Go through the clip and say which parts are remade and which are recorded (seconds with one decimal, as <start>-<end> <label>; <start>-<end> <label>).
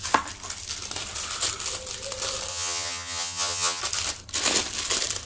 0.0-2.5 recorded; 2.5-3.8 remade; 3.8-5.3 recorded